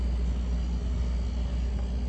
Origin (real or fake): real